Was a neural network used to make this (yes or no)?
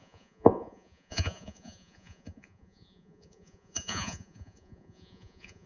yes